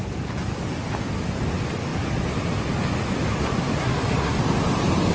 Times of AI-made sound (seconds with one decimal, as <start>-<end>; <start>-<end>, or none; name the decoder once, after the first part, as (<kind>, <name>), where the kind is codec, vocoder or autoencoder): 3.8-4.4 (codec, SNAC)